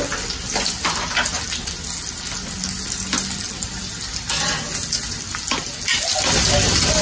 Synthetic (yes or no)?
no